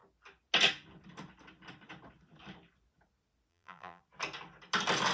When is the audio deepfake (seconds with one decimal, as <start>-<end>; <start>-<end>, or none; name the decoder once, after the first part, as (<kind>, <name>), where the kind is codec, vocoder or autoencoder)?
3.5-4.0 (vocoder, BigVGAN v2)